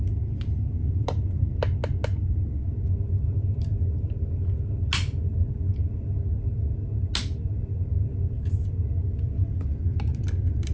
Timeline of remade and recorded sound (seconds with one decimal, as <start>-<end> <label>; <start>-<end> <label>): 0.0-10.7 recorded